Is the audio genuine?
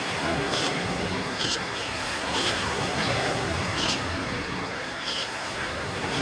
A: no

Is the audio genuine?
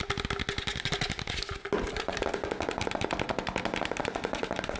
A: yes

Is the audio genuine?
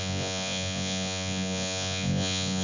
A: no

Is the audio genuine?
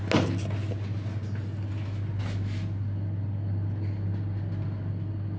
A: yes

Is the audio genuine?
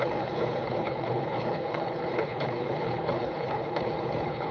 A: no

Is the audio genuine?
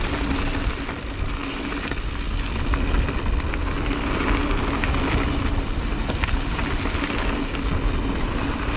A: yes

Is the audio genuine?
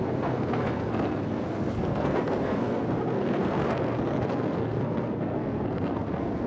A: no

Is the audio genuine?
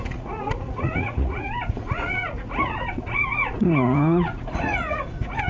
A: no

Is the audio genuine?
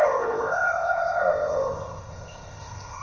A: no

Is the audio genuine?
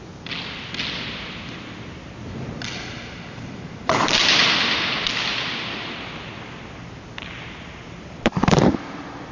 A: yes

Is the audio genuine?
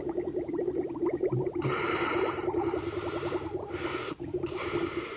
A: no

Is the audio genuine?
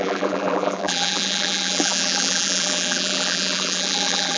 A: no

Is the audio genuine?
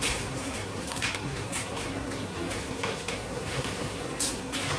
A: no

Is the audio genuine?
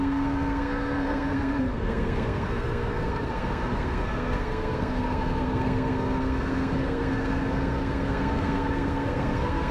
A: no